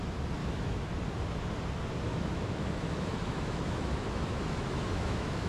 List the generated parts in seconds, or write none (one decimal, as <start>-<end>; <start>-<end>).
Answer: 0.4-0.9; 2.1-5.5